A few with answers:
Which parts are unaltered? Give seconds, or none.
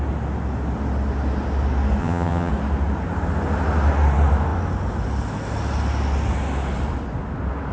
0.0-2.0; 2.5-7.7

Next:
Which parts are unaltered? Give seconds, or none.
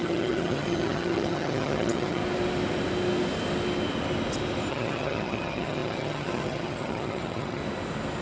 2.2-4.7; 7.6-8.2